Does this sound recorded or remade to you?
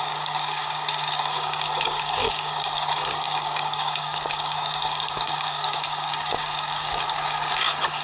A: remade